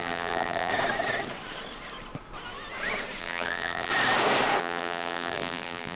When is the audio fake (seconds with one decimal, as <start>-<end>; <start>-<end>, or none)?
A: 0.0-0.7; 3.2-3.9; 4.6-6.0